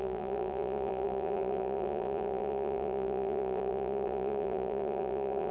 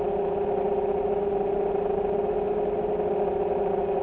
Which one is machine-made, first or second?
first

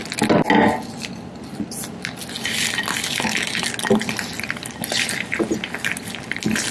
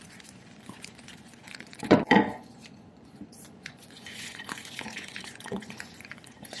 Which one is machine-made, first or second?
second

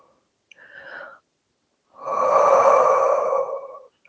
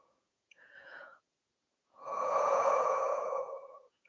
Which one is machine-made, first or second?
second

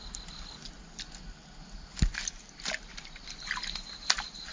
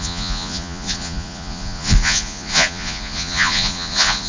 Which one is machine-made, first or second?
second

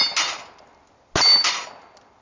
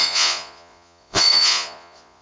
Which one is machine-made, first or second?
second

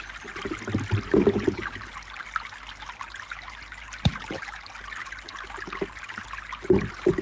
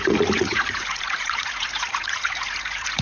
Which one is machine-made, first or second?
second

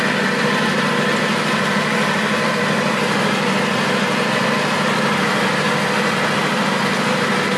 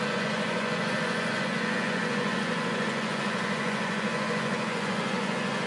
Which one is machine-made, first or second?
second